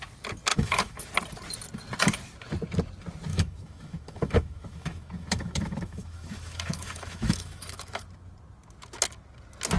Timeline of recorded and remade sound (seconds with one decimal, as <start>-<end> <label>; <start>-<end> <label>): 0.0-0.5 recorded; 0.5-1.0 remade; 1.0-3.3 recorded; 3.3-8.0 remade; 8.0-9.8 recorded